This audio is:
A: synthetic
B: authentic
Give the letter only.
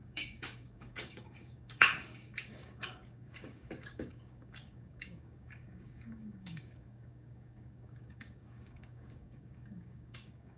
A